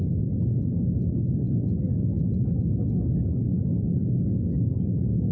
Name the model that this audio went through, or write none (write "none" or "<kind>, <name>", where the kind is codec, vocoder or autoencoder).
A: none